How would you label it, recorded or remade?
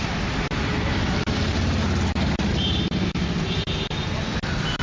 recorded